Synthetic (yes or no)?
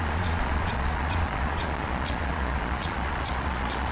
yes